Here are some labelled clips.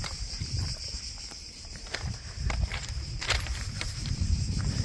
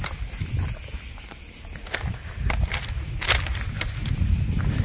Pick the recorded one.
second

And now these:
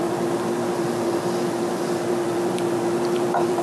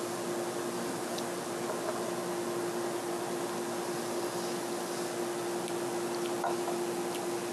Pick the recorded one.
second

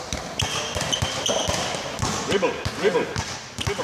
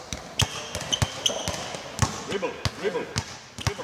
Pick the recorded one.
second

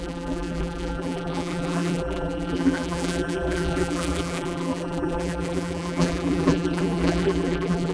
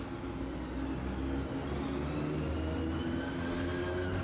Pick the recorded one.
second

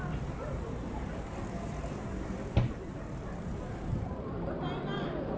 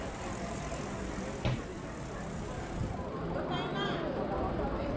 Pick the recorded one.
second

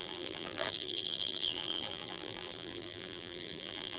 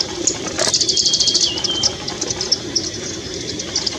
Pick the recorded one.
second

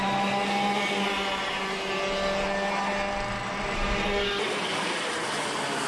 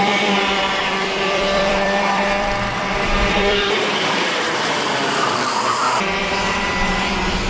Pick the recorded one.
first